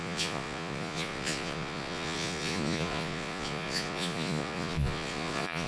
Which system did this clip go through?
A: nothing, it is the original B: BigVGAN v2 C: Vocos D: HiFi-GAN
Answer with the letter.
C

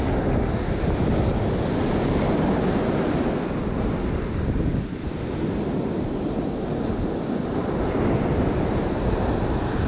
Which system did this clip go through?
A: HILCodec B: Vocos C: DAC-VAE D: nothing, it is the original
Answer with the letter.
D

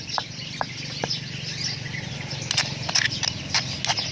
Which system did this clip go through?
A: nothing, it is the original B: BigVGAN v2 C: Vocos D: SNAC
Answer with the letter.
A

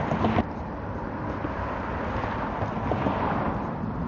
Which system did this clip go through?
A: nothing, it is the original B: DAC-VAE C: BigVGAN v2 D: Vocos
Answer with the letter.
A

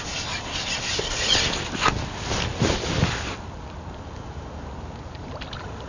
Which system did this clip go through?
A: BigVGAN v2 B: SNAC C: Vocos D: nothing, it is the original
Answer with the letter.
D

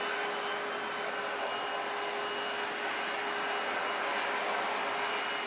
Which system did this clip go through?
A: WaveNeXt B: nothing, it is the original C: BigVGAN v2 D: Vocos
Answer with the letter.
B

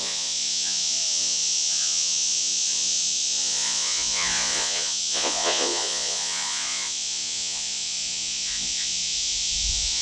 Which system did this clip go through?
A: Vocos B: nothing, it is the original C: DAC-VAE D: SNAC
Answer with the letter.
A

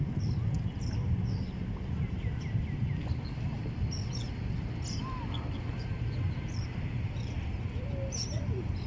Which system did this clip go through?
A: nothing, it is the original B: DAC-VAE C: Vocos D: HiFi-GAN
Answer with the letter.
A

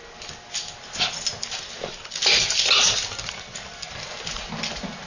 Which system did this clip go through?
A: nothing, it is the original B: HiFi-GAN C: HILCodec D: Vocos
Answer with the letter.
A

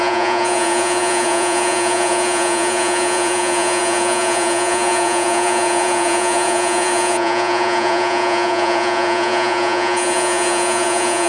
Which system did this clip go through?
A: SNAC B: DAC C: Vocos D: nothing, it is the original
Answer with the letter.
C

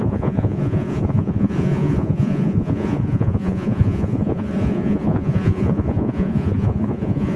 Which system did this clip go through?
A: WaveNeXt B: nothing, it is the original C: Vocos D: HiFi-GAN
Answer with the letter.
C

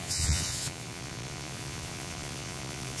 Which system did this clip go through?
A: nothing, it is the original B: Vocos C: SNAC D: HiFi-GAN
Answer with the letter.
B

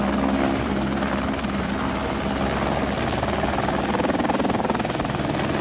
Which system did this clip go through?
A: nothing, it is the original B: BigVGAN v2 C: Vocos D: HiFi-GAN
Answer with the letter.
A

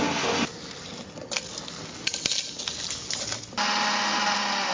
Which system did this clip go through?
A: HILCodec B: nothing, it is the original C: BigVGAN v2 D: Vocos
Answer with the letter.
B